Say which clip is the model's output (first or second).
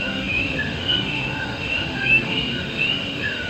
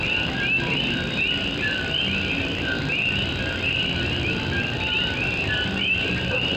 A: first